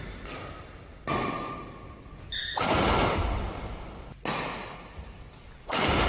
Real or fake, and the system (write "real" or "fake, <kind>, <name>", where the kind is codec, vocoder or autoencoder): real